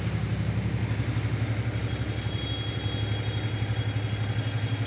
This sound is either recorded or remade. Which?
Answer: recorded